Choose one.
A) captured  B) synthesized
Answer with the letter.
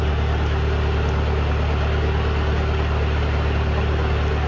A